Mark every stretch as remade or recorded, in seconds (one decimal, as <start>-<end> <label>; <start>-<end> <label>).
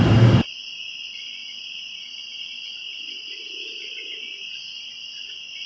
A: 0.0-5.7 recorded